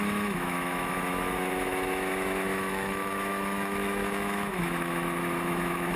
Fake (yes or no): yes